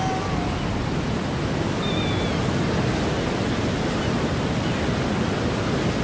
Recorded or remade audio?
recorded